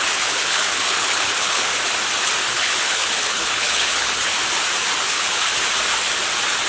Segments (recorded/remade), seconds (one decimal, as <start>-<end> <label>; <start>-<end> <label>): 0.0-1.7 remade; 1.7-2.4 recorded; 2.4-4.3 remade; 4.3-5.1 recorded; 5.1-5.5 remade; 5.5-6.7 recorded